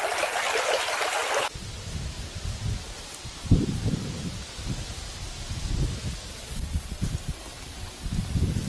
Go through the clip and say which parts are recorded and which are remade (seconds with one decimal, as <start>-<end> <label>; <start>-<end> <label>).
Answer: 0.0-6.3 recorded; 6.3-7.0 remade; 7.0-8.7 recorded